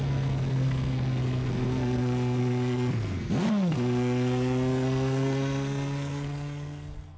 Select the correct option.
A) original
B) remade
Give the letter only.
B